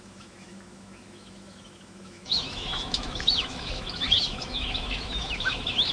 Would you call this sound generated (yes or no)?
yes